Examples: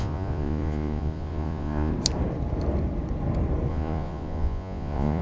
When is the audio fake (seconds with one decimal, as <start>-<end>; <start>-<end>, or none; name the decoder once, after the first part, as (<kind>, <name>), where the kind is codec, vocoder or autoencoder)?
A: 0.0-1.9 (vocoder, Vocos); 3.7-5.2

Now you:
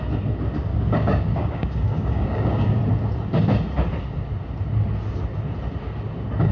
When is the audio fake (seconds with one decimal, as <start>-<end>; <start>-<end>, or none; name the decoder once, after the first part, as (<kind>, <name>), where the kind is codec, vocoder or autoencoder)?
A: 0.7-2.8 (codec, DAC)

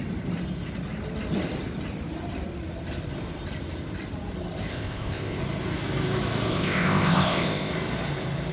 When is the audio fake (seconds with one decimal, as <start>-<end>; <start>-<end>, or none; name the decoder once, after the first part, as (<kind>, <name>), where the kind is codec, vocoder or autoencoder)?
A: 4.7-5.4 (codec, ZipCodec); 6.5-7.7

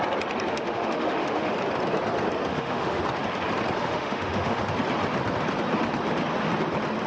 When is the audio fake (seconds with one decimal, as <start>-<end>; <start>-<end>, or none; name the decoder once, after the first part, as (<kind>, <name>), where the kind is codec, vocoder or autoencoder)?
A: 0.5-1.5 (autoencoder, DAC-VAE); 2.5-3.0; 3.8-4.6

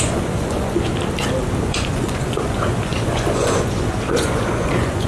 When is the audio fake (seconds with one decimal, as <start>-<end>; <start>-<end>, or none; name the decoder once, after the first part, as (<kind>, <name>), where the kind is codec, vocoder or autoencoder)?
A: 0.0-0.9 (vocoder, Vocos); 1.6-5.1

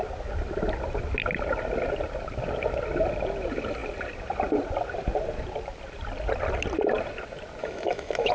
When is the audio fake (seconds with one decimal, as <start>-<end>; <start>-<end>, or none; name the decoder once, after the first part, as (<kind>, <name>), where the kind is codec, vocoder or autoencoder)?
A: 7.6-8.3 (autoencoder, DAC-VAE)

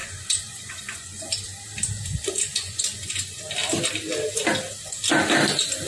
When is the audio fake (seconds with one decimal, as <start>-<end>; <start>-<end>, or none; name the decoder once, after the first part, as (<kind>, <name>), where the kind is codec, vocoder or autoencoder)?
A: 0.0-1.3 (vocoder, Vocos); 2.5-3.4